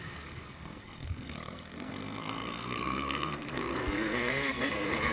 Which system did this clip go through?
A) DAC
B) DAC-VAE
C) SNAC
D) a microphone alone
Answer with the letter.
C